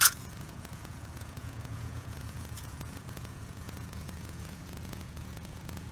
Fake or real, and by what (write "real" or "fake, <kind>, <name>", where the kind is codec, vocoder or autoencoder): fake, vocoder, Vocos